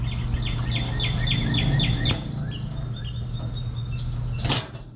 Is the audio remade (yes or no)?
no